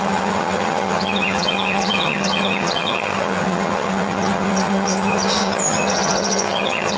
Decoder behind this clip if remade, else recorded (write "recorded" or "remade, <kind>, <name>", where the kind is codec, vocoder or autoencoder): remade, vocoder, HiFi-GAN